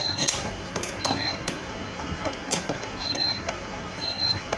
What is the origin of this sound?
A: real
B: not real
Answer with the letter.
B